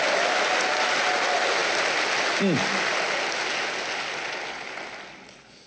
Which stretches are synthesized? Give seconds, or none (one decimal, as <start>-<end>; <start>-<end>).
none